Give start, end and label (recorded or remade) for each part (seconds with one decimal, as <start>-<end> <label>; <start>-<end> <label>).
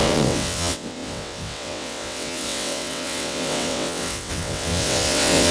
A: 0.0-5.5 remade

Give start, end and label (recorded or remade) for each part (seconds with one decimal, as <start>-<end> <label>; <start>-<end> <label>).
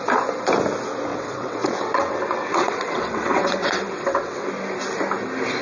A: 0.0-1.1 recorded; 1.1-4.5 remade; 4.5-5.6 recorded